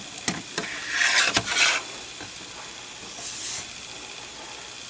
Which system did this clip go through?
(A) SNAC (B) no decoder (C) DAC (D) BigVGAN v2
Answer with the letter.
B